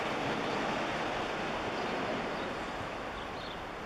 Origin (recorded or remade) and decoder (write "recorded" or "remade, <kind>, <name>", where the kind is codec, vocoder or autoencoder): recorded